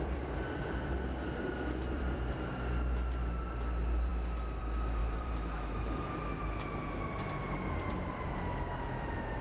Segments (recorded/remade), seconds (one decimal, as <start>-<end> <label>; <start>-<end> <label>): 0.0-1.8 recorded; 1.8-2.5 remade; 2.5-5.0 recorded; 5.0-6.1 remade; 6.1-9.4 recorded